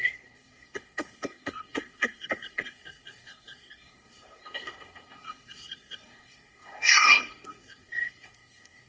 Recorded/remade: remade